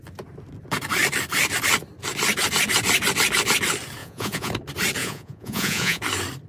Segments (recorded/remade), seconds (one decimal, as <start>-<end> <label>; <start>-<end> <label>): 0.0-4.0 recorded; 4.0-4.5 remade; 4.5-5.0 recorded; 5.0-6.0 remade; 6.0-6.5 recorded